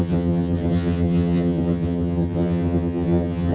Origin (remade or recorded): remade